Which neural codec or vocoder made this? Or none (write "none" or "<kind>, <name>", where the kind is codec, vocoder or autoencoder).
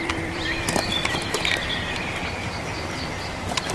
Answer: vocoder, BigVGAN v2